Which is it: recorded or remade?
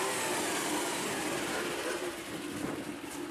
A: remade